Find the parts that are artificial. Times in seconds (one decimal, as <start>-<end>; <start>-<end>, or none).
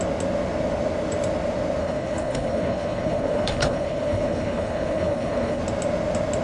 1.8-5.6